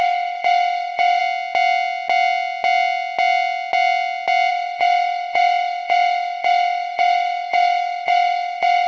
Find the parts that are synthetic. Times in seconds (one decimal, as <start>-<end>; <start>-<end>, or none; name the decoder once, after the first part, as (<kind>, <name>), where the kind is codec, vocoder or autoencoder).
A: 0.0-1.2 (vocoder, Vocos); 4.5-8.9